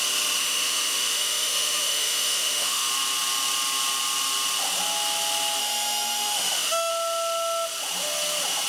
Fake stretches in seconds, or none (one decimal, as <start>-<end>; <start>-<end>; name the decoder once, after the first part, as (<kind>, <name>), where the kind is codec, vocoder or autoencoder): 0.4-2.9 (autoencoder, DAC-VAE); 5.6-6.9